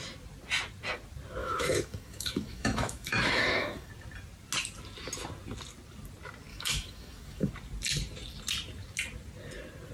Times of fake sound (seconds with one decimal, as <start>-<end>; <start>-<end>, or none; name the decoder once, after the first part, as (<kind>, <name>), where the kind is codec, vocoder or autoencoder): 1.4-3.9 (autoencoder, DAC-VAE); 6.5-7.5